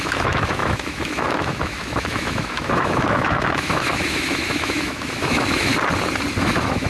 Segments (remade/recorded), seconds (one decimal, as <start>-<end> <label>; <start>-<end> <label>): 0.0-5.7 remade; 5.7-6.4 recorded; 6.4-6.9 remade